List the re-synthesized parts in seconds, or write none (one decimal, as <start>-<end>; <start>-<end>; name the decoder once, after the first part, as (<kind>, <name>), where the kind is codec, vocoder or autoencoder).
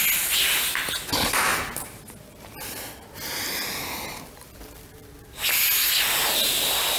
none